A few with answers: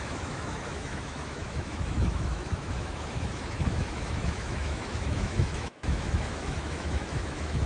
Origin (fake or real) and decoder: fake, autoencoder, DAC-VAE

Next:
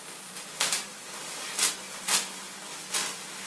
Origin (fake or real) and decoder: fake, vocoder, BigVGAN v2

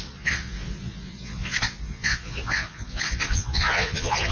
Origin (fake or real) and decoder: fake, vocoder, Vocos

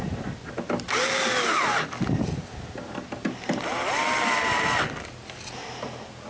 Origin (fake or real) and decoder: real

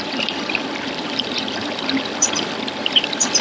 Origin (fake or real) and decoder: fake, vocoder, BigVGAN v2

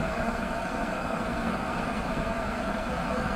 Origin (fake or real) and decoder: fake, codec, SNAC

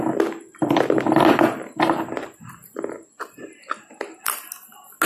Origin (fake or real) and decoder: real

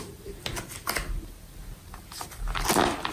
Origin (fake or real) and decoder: real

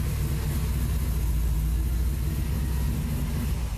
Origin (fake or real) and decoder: real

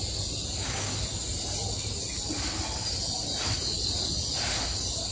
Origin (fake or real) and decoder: real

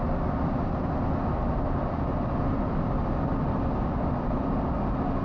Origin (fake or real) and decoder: real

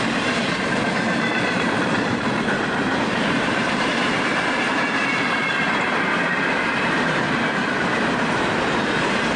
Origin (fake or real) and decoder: fake, vocoder, BigVGAN v2